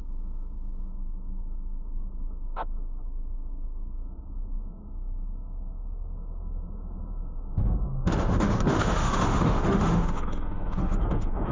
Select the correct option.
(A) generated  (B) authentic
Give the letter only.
A